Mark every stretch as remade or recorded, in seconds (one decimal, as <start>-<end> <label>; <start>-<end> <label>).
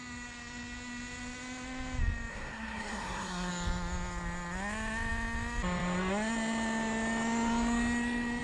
0.0-2.3 recorded; 2.3-3.5 remade; 3.5-8.4 recorded